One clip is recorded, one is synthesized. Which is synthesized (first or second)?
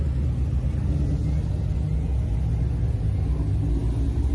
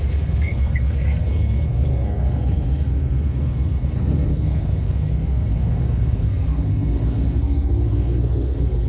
second